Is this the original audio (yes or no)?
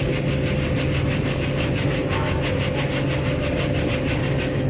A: yes